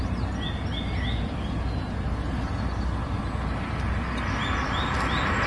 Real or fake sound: real